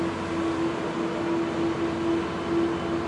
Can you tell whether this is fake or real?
real